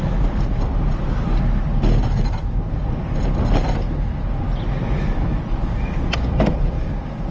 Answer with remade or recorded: recorded